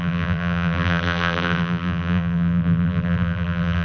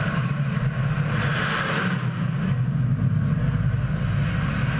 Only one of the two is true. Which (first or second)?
second